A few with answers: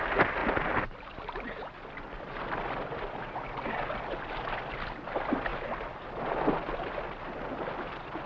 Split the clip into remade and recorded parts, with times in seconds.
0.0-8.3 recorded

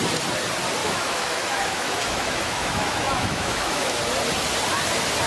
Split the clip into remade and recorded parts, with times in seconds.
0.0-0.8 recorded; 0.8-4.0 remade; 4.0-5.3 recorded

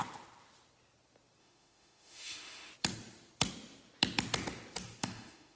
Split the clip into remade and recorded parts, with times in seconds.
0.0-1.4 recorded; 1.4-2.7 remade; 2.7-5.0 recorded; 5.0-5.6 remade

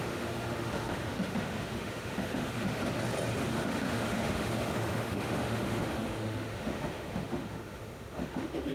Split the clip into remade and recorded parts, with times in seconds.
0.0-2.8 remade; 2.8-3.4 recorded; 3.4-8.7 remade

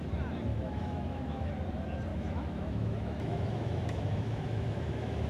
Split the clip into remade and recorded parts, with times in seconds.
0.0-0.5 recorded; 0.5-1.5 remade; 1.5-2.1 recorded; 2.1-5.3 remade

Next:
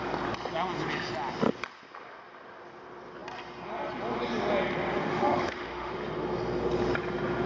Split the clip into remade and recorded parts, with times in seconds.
0.0-5.0 recorded; 5.0-5.9 remade; 5.9-7.5 recorded

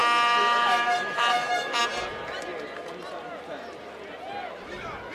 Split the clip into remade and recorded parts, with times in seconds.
0.0-1.8 remade; 1.8-5.1 recorded

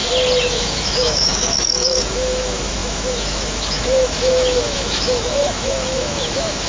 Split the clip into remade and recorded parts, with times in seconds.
0.0-0.5 recorded; 0.5-6.7 remade